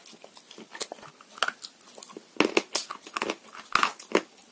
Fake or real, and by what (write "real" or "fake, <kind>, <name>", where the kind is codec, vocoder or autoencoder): real